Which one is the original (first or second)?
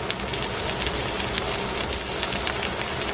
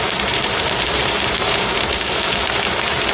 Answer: first